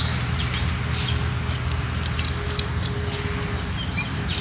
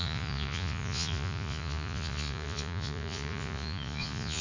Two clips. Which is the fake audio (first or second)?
second